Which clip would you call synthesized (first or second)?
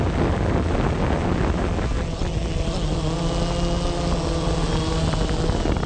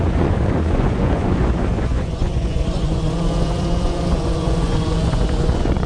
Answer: second